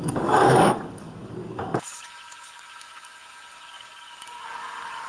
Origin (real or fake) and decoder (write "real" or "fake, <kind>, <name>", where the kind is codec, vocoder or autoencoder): fake, codec, DAC